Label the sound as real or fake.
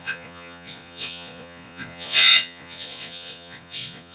fake